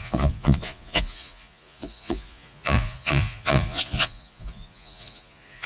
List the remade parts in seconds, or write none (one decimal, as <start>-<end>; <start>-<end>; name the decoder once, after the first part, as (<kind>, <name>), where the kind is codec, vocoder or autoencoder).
0.0-5.7 (vocoder, Vocos)